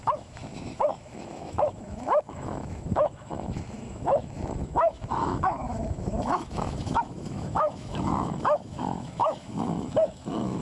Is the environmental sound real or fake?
fake